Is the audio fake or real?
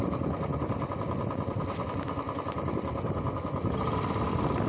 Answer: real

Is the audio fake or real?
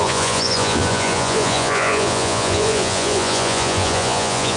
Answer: fake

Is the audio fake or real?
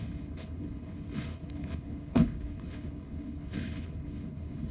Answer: fake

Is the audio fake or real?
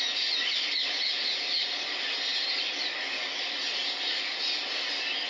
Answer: real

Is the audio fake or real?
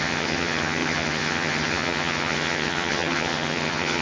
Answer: fake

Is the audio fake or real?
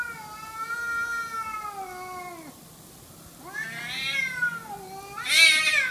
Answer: real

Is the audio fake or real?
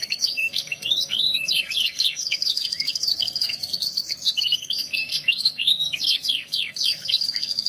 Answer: fake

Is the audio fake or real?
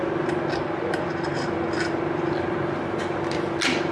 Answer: real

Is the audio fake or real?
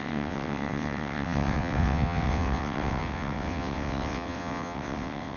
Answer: fake